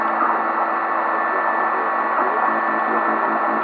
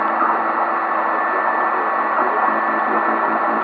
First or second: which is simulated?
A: second